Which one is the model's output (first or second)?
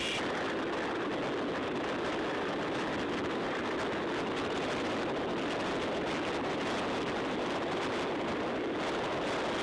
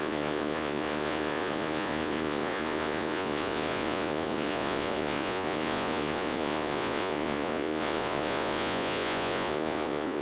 second